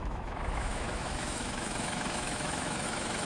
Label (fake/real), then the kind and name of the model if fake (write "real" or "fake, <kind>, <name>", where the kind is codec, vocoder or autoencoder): fake, autoencoder, DAC-VAE